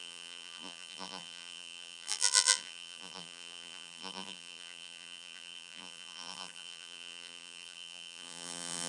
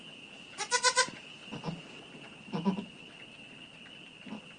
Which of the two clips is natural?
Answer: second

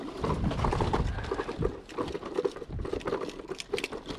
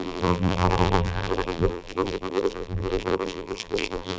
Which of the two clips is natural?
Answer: first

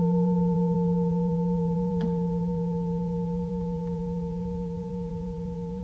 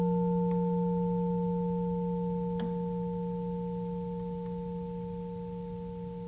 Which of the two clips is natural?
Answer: second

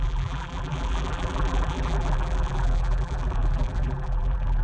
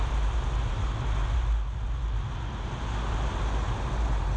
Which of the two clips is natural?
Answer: second